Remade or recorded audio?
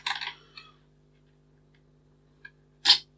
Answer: recorded